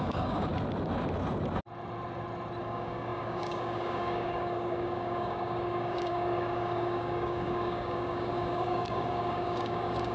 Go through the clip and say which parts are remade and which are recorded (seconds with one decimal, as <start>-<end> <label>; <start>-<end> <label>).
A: 0.0-0.5 remade; 0.5-2.6 recorded; 2.6-10.1 remade